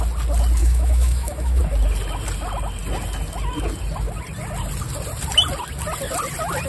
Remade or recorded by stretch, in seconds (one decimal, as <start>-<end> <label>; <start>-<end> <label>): 0.0-0.6 recorded; 0.6-1.6 remade; 1.6-6.7 recorded